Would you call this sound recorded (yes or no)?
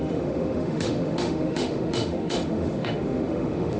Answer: no